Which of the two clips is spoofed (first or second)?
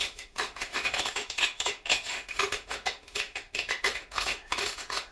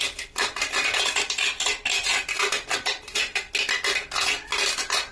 first